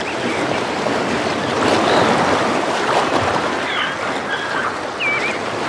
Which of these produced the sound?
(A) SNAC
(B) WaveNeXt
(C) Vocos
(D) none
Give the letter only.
D